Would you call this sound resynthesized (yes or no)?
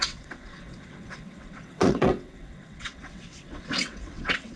yes